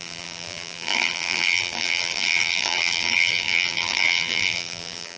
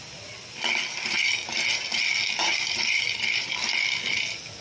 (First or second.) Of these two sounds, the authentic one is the second